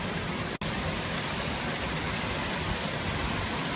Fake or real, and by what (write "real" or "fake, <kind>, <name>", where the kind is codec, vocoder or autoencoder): real